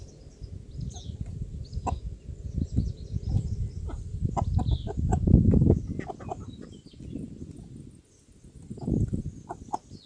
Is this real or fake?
real